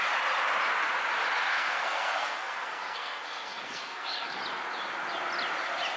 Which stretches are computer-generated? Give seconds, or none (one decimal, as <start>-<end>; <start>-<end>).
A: 1.5-4.4